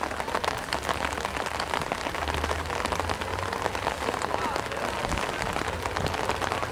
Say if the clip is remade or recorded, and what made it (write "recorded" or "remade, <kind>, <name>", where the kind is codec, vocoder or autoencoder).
recorded